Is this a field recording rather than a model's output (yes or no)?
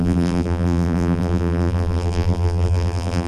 no